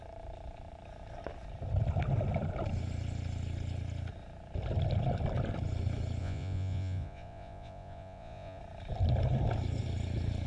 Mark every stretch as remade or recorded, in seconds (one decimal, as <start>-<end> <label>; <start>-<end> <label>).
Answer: 0.0-6.2 recorded; 6.2-8.6 remade; 8.6-10.5 recorded